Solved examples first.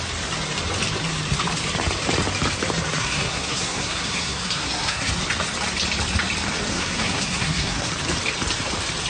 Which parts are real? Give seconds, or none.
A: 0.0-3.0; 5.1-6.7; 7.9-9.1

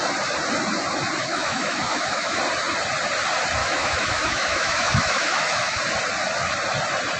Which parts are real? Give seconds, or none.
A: 0.0-1.2; 2.4-3.6; 5.8-7.2

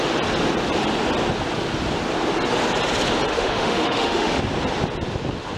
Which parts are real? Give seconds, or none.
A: 0.0-3.3; 4.4-5.6